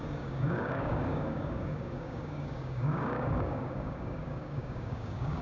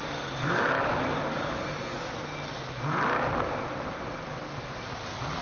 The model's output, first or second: first